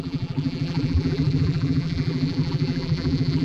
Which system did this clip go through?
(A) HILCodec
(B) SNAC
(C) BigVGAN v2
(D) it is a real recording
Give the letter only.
C